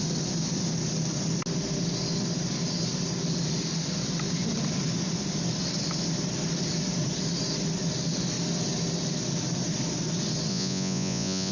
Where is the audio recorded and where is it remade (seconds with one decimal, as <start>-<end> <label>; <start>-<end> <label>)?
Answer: 0.0-10.5 recorded; 10.5-11.5 remade